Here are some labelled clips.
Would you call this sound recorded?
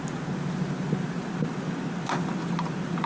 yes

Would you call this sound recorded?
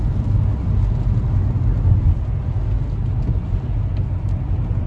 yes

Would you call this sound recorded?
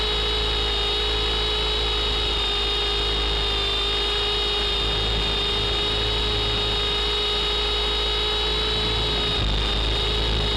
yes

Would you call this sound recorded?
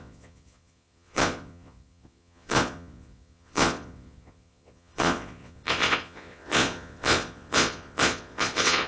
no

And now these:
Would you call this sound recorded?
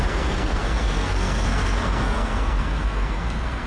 no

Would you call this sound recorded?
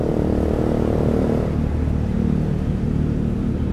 yes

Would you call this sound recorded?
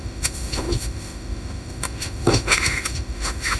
no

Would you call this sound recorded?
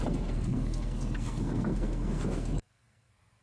no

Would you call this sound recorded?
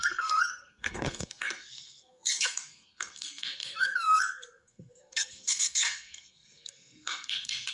no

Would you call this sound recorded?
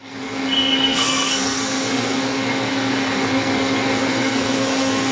no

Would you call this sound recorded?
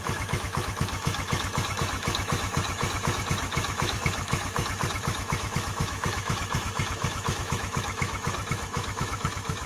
no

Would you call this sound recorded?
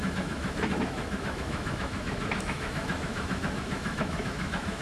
no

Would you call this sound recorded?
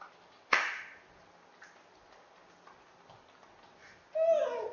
yes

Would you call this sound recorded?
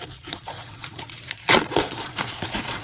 no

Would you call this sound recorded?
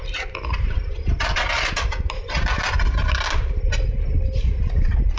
yes